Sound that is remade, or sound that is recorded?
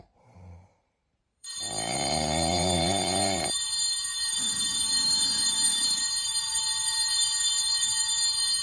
remade